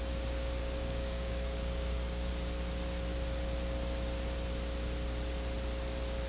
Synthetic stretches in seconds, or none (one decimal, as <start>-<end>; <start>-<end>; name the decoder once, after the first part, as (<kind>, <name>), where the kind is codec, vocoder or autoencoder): 0.6-2.3 (codec, DAC)